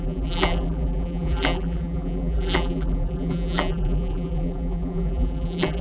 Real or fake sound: fake